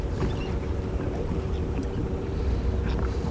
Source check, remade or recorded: remade